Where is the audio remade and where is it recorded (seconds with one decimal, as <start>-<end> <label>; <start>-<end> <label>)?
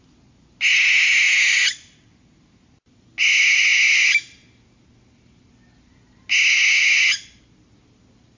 0.0-8.4 recorded